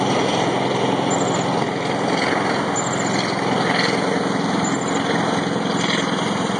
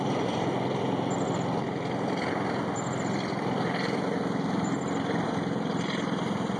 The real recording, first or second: first